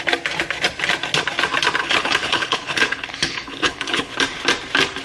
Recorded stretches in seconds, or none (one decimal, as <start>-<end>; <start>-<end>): 0.0-1.8; 4.1-5.0